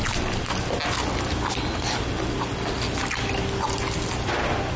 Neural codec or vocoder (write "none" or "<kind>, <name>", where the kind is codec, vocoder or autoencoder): none